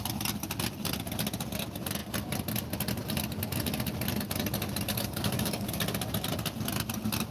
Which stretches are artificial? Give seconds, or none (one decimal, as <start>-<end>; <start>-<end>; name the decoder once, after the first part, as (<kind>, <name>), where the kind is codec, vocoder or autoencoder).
4.9-5.8 (codec, DAC)